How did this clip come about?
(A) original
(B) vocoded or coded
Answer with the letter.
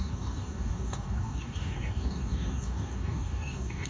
B